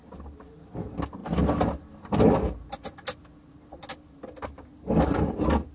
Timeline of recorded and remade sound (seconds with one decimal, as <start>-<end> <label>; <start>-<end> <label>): 0.0-5.7 recorded